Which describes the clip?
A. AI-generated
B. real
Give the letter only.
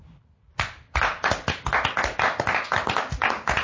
A